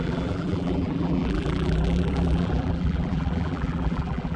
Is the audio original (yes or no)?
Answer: no